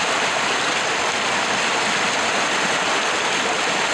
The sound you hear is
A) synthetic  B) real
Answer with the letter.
B